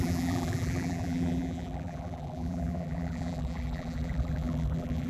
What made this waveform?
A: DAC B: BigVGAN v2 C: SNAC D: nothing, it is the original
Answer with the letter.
B